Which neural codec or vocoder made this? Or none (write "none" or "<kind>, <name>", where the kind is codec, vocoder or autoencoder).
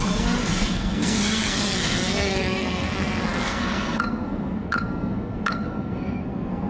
codec, SNAC